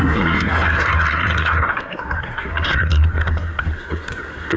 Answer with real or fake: fake